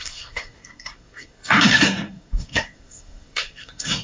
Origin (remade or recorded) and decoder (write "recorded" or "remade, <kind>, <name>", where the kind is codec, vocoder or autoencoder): remade, codec, SNAC